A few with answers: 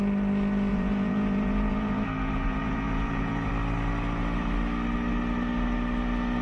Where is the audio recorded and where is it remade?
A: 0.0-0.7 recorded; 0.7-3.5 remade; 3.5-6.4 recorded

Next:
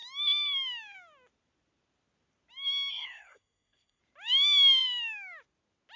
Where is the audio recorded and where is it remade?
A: 0.0-2.9 recorded; 2.9-4.0 remade; 4.0-6.0 recorded

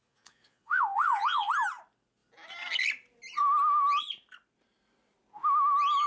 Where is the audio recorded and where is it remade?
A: 0.0-1.5 remade; 1.5-6.1 recorded